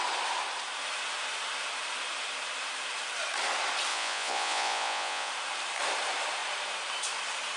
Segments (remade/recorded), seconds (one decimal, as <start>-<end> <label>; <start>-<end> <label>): 0.0-3.9 recorded; 3.9-5.3 remade; 5.3-7.6 recorded